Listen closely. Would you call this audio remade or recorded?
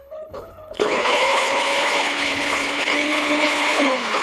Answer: remade